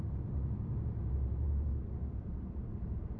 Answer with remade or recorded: remade